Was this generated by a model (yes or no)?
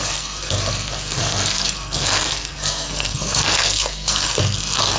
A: yes